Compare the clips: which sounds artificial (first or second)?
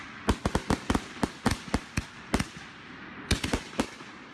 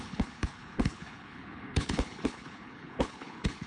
second